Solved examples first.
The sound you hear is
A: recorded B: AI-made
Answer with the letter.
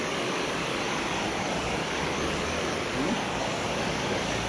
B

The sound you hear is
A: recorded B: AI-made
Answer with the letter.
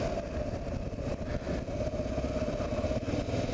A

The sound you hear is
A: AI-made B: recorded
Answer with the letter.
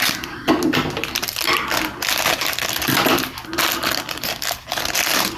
B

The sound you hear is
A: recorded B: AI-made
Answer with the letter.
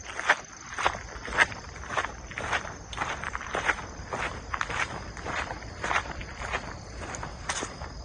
B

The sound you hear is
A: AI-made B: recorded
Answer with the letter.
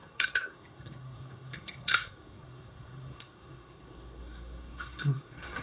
A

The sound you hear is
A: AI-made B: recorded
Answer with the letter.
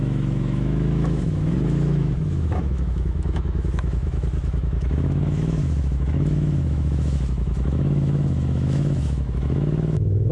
A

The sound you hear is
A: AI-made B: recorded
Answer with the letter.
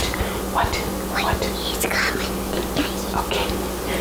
B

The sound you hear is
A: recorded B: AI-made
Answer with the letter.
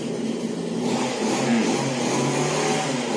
A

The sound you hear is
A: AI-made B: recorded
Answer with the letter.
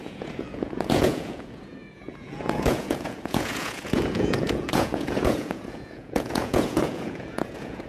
A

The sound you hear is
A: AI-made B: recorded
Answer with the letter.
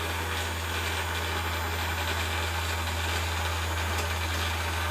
B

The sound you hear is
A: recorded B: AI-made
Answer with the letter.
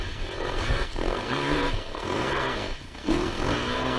B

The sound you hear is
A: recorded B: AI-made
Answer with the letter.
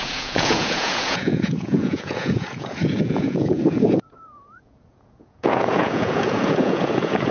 B